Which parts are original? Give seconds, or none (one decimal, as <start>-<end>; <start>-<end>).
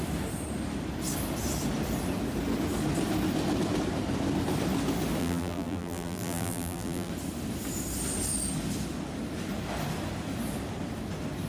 0.0-5.2; 7.1-11.5